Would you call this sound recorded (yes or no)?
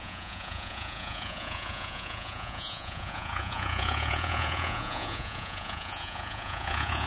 no